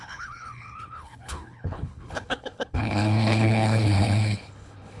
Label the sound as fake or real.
fake